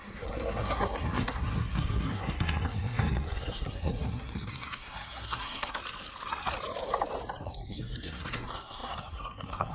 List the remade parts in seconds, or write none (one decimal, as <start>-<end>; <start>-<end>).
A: 0.0-5.8; 7.4-9.7